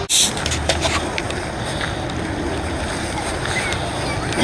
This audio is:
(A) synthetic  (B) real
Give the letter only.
B